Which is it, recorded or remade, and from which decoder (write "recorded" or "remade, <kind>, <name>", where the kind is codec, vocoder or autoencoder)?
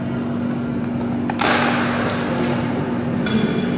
recorded